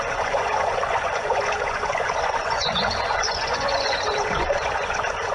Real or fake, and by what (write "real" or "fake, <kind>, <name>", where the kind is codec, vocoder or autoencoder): fake, vocoder, Vocos